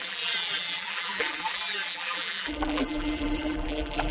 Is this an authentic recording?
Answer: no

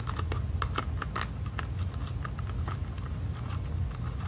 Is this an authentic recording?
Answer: yes